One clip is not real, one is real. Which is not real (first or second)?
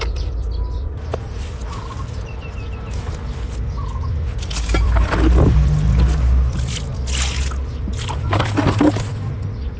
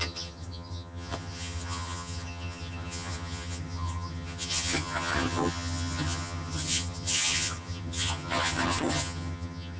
second